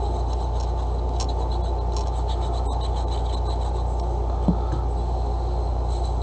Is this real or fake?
real